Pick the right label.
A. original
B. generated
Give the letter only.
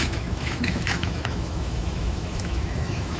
B